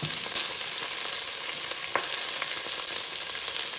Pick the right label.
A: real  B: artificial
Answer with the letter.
A